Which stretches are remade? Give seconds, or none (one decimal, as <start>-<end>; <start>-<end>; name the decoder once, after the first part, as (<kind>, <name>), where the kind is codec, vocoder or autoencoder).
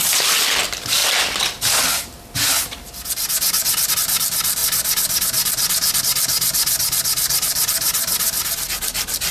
none